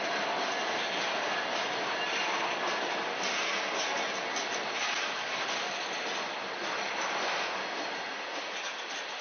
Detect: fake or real real